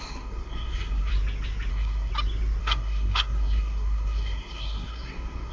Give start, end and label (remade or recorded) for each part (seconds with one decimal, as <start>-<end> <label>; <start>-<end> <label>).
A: 0.0-1.1 remade; 1.1-1.7 recorded; 1.7-2.1 remade; 2.1-2.6 recorded; 2.6-5.5 remade